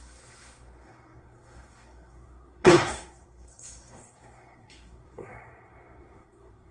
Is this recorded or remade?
remade